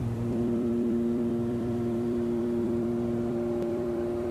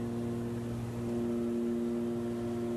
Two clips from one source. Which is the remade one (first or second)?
first